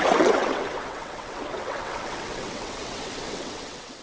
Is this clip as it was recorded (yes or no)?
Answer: no